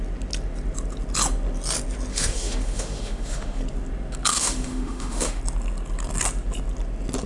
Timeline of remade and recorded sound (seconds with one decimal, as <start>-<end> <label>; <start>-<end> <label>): 0.0-2.1 recorded; 2.1-3.6 remade; 3.6-4.3 recorded; 4.3-5.4 remade; 5.4-7.3 recorded